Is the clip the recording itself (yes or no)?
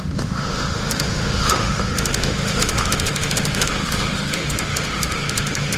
no